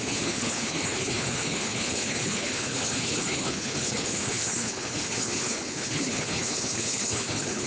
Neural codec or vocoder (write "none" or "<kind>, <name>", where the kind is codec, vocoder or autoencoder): codec, HILCodec